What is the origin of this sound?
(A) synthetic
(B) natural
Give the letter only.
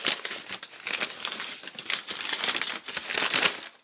B